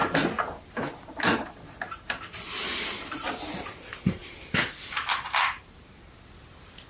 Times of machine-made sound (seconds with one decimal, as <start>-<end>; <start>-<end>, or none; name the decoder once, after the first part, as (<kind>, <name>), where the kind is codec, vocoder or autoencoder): none